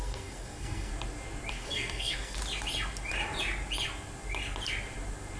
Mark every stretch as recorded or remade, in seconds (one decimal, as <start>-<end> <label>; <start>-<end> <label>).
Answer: 0.0-0.9 remade; 0.9-1.5 recorded; 1.5-2.4 remade; 2.4-5.4 recorded